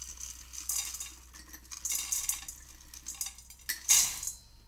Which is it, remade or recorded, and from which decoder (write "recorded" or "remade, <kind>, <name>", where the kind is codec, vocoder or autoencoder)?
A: recorded